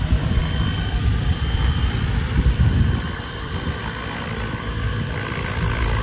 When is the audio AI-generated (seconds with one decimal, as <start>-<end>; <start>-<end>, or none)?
0.4-3.8